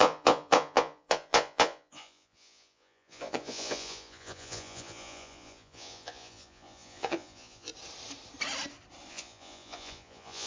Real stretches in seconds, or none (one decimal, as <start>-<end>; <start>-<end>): 7.7-9.1